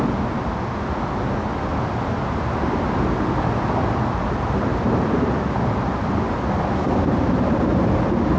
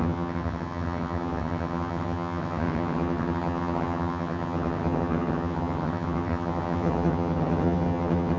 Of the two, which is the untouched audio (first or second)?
first